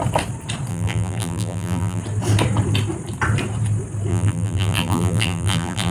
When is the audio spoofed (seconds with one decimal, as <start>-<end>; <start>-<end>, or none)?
0.7-2.0; 4.1-5.9